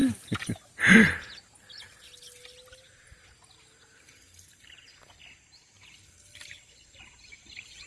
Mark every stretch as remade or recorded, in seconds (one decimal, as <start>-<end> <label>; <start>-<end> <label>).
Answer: 0.0-7.9 recorded